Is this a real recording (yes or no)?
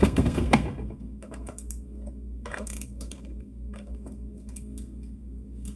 no